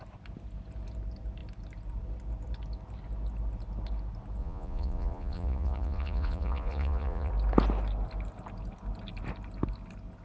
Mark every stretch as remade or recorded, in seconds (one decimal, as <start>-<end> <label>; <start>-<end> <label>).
0.0-4.4 recorded; 4.4-7.3 remade; 7.3-10.2 recorded